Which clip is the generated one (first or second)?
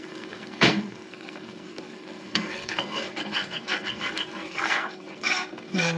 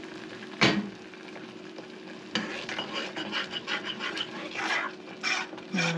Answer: first